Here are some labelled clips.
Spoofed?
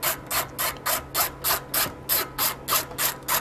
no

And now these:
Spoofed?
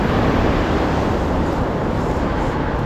no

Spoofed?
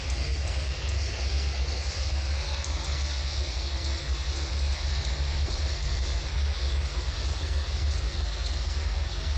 yes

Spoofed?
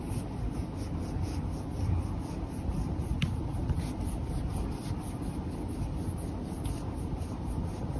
no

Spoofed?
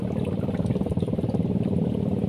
no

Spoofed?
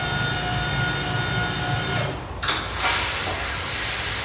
no